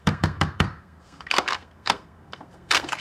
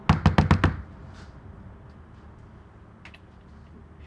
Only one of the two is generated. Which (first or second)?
first